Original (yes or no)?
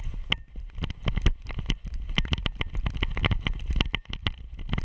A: yes